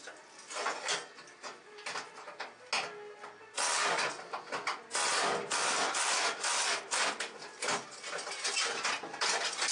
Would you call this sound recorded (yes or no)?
yes